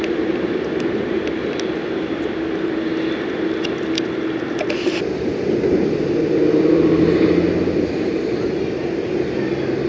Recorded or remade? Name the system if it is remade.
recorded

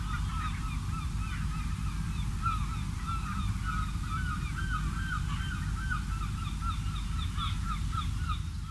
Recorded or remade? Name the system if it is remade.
recorded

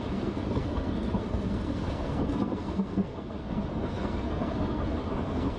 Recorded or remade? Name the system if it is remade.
remade, codec, SNAC